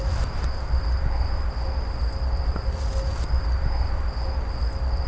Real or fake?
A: real